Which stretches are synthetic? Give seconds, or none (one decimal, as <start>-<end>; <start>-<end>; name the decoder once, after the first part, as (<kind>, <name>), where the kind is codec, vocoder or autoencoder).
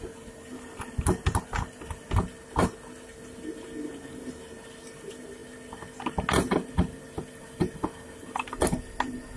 none